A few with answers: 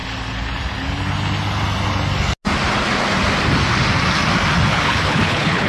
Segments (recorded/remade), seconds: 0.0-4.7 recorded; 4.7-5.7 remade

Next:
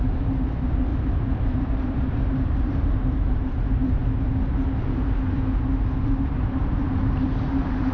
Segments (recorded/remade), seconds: 0.0-4.0 remade; 4.0-6.0 recorded; 6.0-7.9 remade

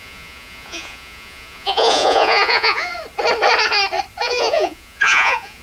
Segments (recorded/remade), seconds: 0.0-2.9 remade; 2.9-4.2 recorded; 4.2-5.6 remade

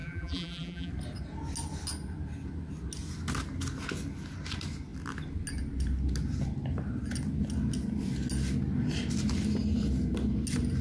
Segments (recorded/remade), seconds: 0.0-0.9 remade; 0.9-10.8 recorded

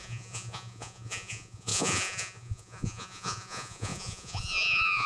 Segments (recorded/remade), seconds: 0.0-5.1 remade

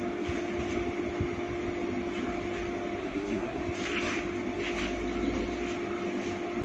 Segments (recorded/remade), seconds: 0.0-3.0 recorded; 3.0-3.6 remade; 3.6-6.6 recorded

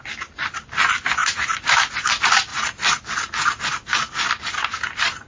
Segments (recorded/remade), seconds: 0.0-2.5 remade; 2.5-3.6 recorded; 3.6-5.3 remade

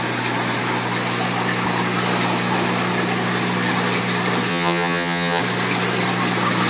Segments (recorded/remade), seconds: 0.0-4.5 recorded; 4.5-5.4 remade; 5.4-6.7 recorded